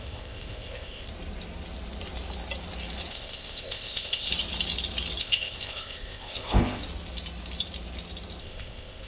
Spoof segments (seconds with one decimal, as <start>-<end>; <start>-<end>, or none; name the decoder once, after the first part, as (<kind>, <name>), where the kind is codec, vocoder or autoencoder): 0.0-1.1 (codec, ZipCodec); 3.1-4.3; 5.2-6.8; 8.4-9.1